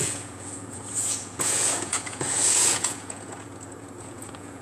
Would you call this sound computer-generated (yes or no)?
yes